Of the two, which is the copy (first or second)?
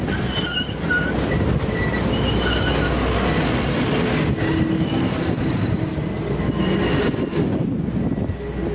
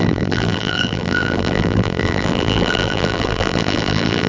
second